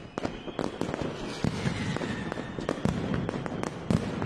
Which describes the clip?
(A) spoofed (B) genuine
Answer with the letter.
B